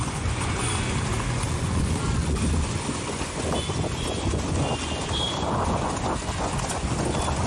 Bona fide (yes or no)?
no